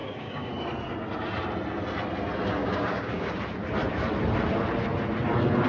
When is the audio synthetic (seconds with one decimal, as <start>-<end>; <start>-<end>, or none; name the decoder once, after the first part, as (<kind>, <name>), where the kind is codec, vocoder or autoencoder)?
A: 0.0-0.5 (codec, DAC); 2.6-3.3